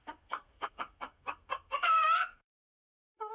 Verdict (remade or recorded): remade